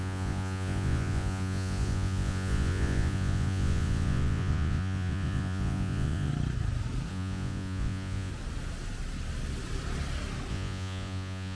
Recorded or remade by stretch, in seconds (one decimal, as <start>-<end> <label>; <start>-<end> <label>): 0.0-6.3 remade; 6.3-7.1 recorded; 7.1-8.3 remade; 8.3-10.5 recorded; 10.5-11.6 remade